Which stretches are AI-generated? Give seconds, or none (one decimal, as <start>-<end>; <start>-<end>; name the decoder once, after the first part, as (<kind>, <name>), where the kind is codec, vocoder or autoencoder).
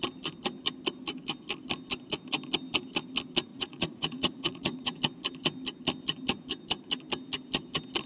3.5-5.0 (vocoder, Vocos)